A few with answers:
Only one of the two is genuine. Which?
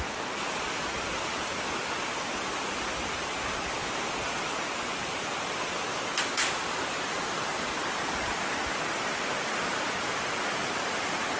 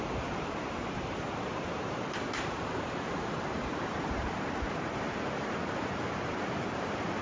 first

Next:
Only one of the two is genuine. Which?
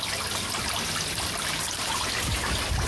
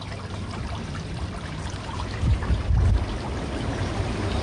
first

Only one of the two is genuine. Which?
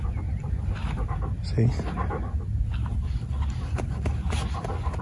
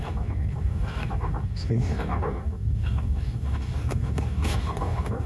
first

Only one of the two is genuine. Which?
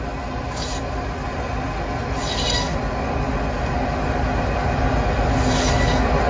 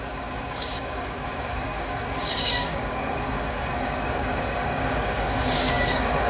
first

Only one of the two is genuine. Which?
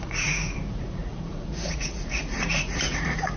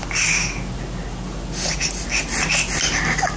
second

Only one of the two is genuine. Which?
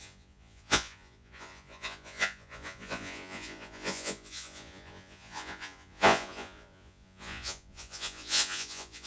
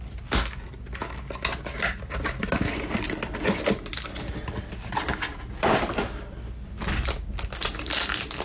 second